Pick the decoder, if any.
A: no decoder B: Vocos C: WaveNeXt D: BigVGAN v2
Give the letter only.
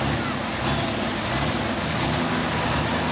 A